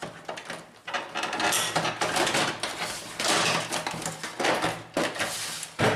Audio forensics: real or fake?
real